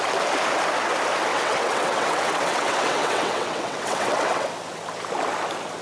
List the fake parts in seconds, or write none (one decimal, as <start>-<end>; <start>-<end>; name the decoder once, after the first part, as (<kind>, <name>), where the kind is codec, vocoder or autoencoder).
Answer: 1.3-4.5 (vocoder, WaveNeXt)